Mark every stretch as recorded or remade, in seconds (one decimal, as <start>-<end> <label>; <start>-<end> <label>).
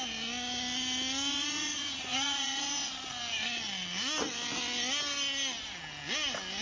0.0-1.3 recorded; 1.3-2.9 remade; 2.9-6.6 recorded